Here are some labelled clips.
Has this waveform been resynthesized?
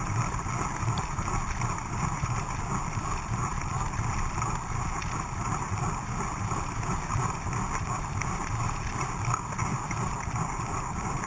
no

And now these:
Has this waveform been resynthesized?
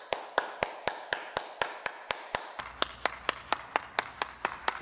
no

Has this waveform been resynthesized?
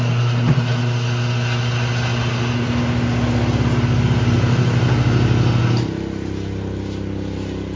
no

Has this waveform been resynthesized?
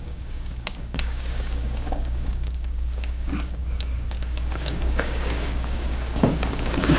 yes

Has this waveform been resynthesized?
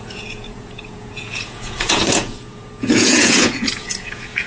yes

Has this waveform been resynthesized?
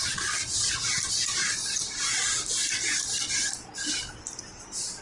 no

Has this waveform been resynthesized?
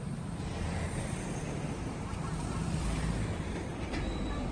yes